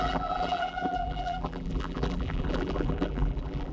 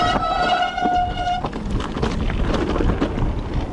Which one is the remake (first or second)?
first